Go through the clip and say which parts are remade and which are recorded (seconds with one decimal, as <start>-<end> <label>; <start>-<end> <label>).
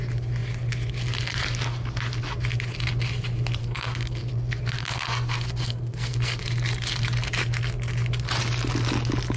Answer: 0.0-3.6 recorded; 3.6-4.3 remade; 4.3-4.8 recorded; 4.8-6.4 remade; 6.4-9.4 recorded